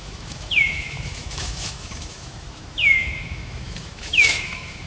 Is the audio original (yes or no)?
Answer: no